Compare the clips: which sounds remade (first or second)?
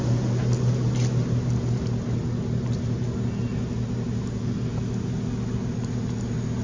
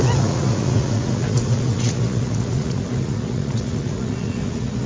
second